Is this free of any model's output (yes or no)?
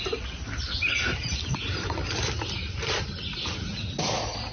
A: yes